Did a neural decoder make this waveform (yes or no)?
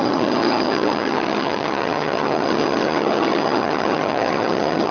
yes